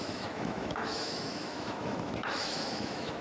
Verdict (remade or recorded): remade